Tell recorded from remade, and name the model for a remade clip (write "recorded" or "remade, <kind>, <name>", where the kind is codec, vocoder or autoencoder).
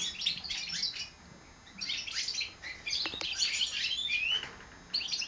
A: recorded